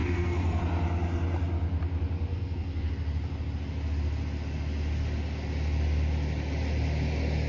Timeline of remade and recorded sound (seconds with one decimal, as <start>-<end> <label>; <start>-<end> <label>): 0.0-0.6 remade; 0.6-2.3 recorded; 2.3-2.9 remade; 2.9-7.5 recorded